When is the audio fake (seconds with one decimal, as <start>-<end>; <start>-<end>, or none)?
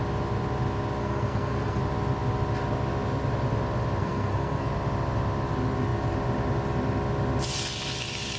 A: 1.0-1.8; 4.0-4.7